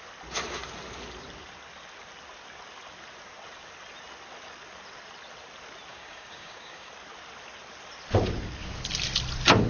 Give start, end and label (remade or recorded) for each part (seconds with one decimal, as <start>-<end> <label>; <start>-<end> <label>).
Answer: 0.0-5.9 recorded; 5.9-6.9 remade; 6.9-9.7 recorded